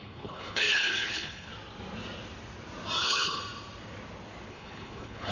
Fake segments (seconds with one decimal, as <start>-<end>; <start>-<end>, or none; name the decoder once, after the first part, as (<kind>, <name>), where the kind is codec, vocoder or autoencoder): 0.0-1.5 (codec, HILCodec); 3.0-3.4; 4.5-5.3

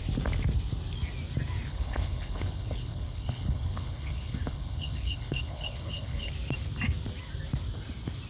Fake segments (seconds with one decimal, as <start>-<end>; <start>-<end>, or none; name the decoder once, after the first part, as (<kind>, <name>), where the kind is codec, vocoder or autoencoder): 1.7-6.3 (codec, HILCodec)